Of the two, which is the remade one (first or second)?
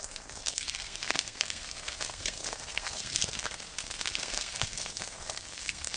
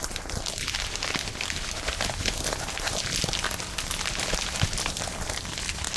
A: first